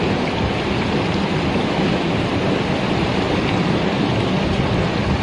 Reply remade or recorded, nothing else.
recorded